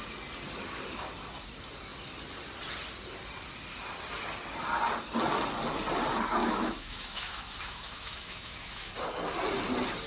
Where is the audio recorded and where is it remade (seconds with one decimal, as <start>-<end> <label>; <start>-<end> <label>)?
0.0-6.4 recorded; 6.4-8.9 remade; 8.9-10.1 recorded